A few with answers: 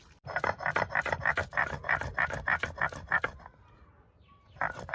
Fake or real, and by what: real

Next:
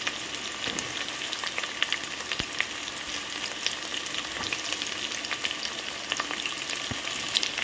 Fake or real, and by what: real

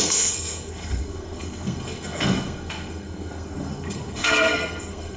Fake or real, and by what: fake, codec, SNAC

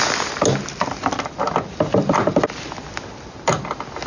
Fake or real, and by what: real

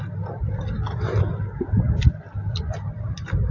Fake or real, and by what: real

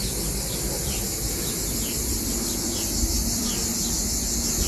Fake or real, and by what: real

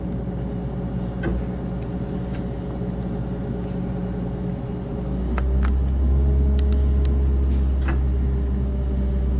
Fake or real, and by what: real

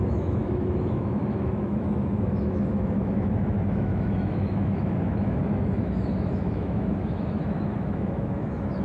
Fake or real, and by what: fake, autoencoder, DAC-VAE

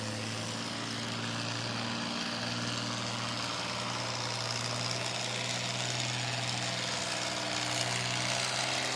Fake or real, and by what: real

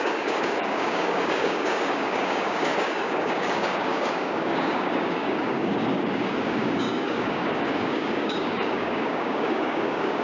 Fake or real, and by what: fake, codec, DAC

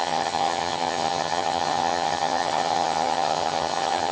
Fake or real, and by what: fake, vocoder, HiFi-GAN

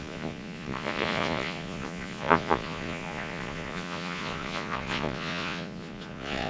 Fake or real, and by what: fake, vocoder, Vocos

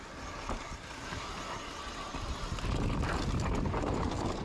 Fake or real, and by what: real